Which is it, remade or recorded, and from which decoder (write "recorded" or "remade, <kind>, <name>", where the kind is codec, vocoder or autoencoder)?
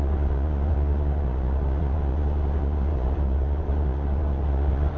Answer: remade, vocoder, Vocos